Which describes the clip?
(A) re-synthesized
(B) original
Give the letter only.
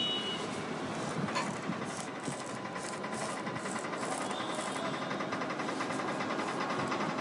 B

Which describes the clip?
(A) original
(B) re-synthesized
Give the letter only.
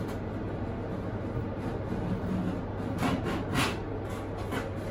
A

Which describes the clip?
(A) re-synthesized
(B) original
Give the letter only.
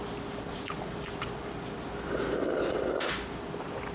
B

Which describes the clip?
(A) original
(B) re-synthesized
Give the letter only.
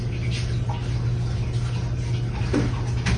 A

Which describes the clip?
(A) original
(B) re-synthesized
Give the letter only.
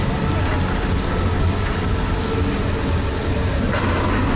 A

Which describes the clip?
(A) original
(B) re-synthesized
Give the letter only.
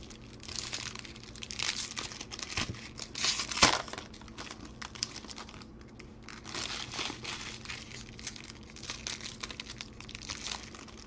A